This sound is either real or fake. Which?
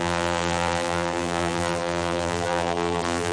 fake